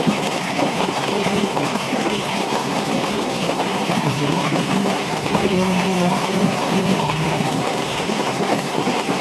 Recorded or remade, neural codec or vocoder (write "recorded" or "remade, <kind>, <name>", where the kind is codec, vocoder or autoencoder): remade, codec, SNAC